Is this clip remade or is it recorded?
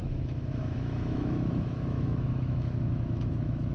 remade